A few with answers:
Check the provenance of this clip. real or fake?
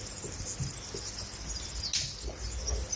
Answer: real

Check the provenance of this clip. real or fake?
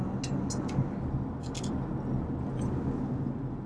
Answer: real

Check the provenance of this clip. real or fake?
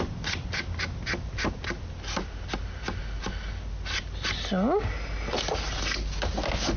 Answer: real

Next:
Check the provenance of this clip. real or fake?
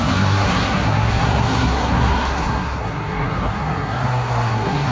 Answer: fake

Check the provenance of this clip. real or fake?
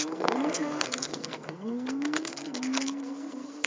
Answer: fake